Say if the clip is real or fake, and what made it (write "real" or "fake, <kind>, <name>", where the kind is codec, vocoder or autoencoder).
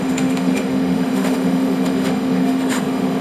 fake, autoencoder, DAC-VAE